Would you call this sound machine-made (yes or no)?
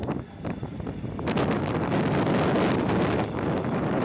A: no